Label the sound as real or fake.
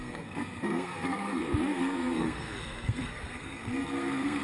fake